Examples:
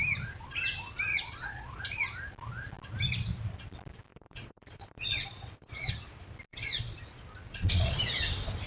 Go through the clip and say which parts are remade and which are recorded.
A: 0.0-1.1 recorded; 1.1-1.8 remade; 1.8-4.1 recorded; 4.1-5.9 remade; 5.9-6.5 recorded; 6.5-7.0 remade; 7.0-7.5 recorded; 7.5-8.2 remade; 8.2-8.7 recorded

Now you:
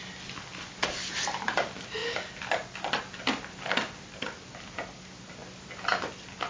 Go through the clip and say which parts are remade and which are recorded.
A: 0.0-6.5 recorded